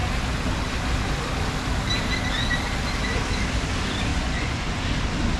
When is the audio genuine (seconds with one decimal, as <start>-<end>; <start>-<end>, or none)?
0.0-4.1; 4.7-5.4